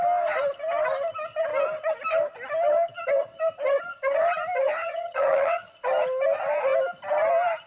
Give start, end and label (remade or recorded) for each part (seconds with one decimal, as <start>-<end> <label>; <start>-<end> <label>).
0.0-4.8 recorded; 4.8-5.7 remade; 5.7-7.7 recorded